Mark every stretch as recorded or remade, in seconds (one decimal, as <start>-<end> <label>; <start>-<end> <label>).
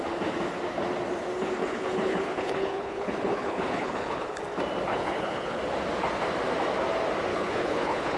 0.0-1.6 recorded; 1.6-4.4 remade; 4.4-4.9 recorded; 4.9-5.6 remade; 5.6-7.3 recorded; 7.3-8.2 remade